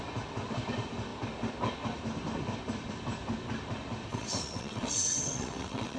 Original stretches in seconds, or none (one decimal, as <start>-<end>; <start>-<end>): 0.0-4.1